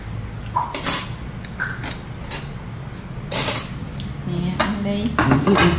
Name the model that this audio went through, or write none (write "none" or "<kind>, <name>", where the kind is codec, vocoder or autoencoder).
none